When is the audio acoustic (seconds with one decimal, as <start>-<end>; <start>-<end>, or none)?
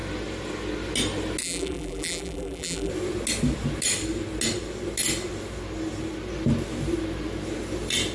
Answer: 0.0-1.4; 2.9-8.1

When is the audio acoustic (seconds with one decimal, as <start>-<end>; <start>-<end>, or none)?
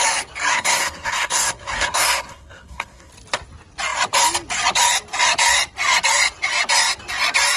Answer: 0.0-0.5; 3.1-7.6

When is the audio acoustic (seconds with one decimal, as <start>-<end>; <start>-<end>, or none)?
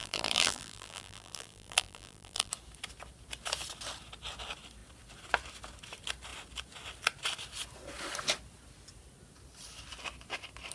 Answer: 2.5-10.7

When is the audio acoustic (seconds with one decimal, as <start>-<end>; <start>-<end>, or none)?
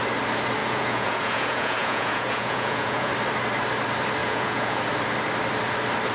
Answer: 0.0-0.6; 3.1-4.2; 4.8-6.1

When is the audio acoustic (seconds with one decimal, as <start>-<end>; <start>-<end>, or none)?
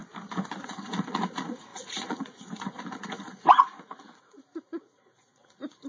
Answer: 0.0-0.6